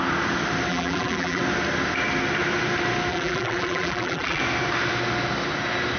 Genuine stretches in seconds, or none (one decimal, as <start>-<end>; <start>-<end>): 0.0-0.7; 1.4-3.1; 4.4-6.0